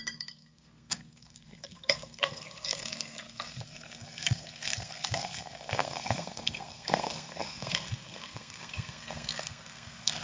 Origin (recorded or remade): remade